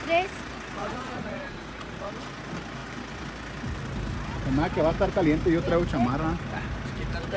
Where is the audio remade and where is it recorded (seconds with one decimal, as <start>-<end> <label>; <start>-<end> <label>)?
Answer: 0.0-0.8 recorded; 0.8-2.1 remade; 2.1-7.4 recorded